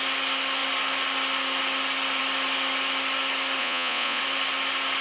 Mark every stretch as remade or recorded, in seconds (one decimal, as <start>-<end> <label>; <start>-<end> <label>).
0.0-3.6 recorded; 3.6-4.2 remade; 4.2-5.0 recorded